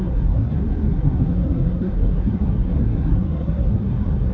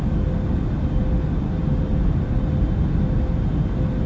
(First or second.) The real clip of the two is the second